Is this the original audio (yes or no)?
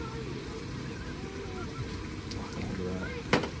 yes